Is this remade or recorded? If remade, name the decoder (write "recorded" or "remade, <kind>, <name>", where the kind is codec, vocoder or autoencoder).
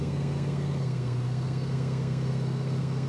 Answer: remade, codec, SNAC